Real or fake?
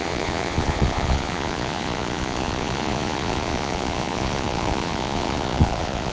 fake